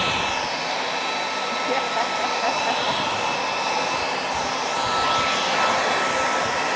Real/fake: real